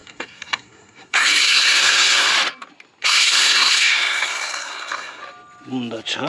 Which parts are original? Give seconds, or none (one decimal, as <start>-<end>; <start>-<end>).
2.3-3.0; 5.2-6.3